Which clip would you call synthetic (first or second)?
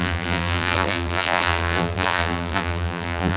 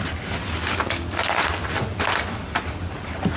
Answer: first